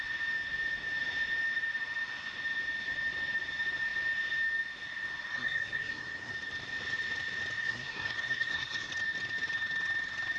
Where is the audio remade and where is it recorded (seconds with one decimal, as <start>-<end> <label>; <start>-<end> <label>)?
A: 0.0-5.3 recorded; 5.3-6.3 remade; 6.3-7.6 recorded; 7.6-8.9 remade; 8.9-10.4 recorded